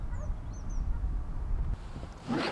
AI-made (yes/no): no